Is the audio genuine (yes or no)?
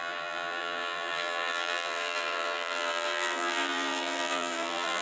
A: no